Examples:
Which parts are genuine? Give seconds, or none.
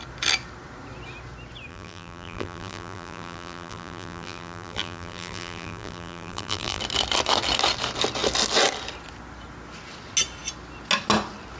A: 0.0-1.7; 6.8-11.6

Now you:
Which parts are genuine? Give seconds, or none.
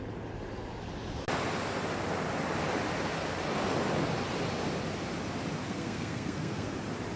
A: 0.0-5.6; 6.7-7.2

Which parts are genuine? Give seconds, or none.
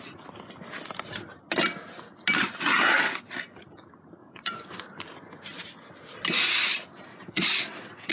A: 0.0-4.2; 4.8-7.1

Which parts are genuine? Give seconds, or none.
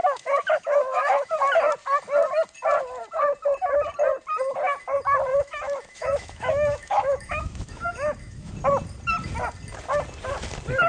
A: 1.3-5.3; 8.5-10.9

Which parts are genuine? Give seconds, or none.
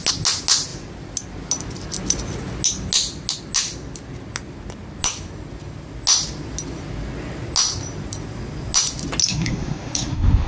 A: 0.0-9.2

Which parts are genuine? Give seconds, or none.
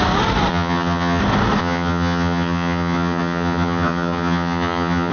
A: 0.0-0.5; 1.2-1.6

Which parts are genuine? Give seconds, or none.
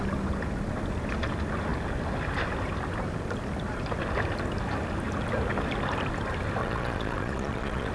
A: 0.0-6.6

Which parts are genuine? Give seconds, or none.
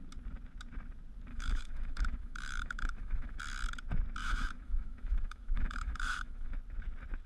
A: 0.0-1.3; 3.4-4.2; 6.5-7.3